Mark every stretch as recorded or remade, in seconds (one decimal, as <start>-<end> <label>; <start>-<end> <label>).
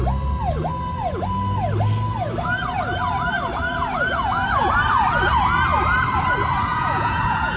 0.0-6.7 recorded; 6.7-7.6 remade